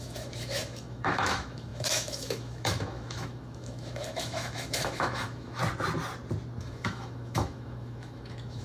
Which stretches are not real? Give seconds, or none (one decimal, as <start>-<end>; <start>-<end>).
0.0-5.6; 6.6-8.6